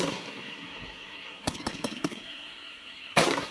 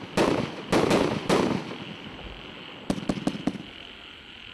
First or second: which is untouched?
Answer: second